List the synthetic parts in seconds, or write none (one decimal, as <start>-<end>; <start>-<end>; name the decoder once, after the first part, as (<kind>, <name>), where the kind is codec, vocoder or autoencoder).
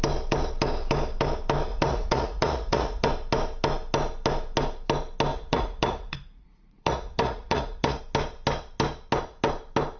1.7-3.1 (vocoder, Vocos); 5.3-8.0